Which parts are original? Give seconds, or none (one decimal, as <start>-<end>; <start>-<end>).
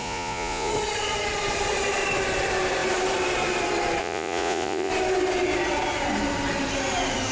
0.7-4.0; 4.9-7.3